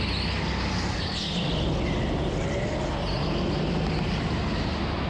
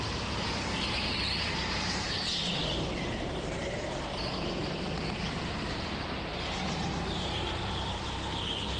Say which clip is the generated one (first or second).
second